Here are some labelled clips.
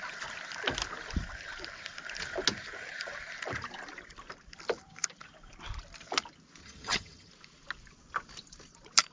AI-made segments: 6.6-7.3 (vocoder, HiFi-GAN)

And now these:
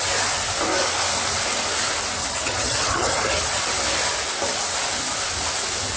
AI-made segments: 2.2-3.6 (vocoder, HiFi-GAN)